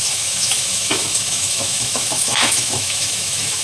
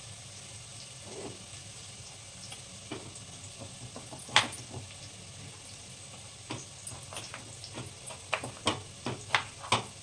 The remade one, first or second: first